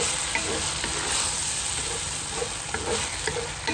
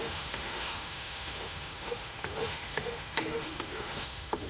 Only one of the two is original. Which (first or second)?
first